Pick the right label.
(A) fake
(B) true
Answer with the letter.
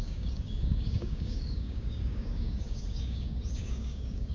A